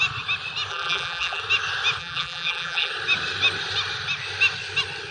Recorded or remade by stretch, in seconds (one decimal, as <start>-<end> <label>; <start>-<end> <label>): 0.0-0.7 recorded; 0.7-1.4 remade; 1.4-2.0 recorded; 2.0-2.9 remade; 2.9-5.1 recorded